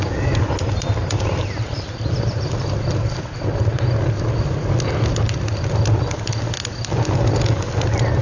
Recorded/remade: recorded